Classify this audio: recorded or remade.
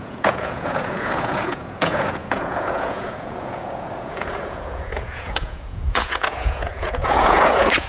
remade